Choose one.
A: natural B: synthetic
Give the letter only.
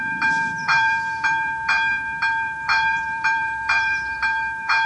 B